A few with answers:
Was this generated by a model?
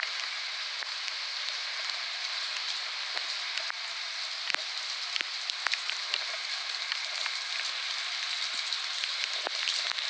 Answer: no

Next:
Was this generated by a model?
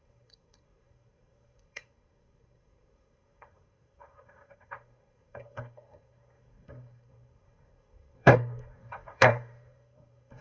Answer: yes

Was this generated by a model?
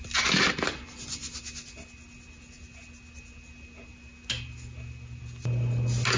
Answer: no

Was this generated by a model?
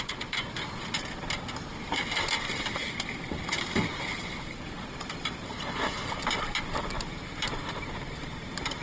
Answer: no